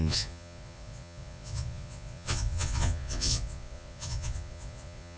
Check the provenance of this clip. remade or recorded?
remade